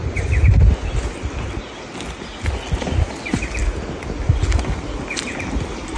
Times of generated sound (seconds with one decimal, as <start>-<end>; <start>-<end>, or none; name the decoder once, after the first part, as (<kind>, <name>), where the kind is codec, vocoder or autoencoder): none